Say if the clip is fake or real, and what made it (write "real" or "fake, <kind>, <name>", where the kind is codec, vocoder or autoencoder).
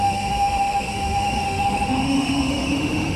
fake, autoencoder, DAC-VAE